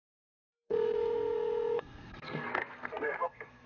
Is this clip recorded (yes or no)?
no